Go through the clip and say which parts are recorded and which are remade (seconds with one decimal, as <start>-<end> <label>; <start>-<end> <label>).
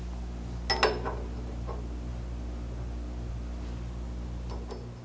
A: 0.0-5.0 recorded